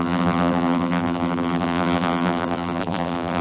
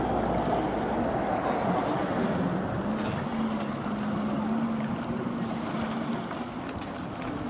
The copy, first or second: first